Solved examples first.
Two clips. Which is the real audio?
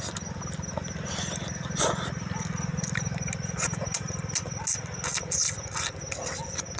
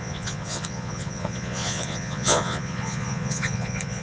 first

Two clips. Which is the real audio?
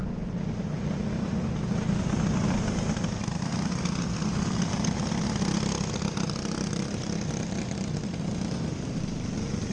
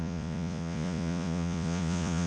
first